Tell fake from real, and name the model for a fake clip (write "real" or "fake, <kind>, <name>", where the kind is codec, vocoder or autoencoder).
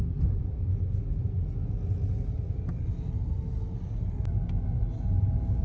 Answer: real